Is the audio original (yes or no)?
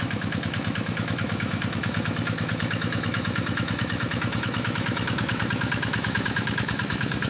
no